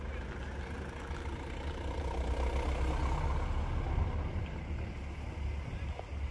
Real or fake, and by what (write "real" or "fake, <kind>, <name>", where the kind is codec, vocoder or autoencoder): real